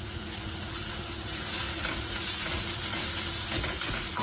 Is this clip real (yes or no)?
no